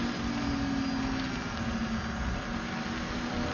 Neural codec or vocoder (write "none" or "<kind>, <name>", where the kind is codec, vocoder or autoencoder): none